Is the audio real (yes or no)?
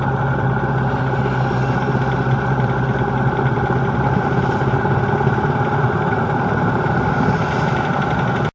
yes